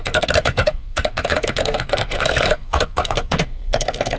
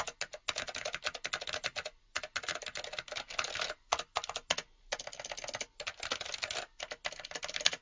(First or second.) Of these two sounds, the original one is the second